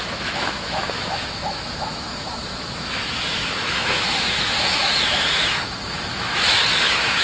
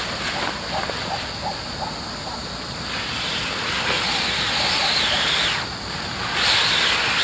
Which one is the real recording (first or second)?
second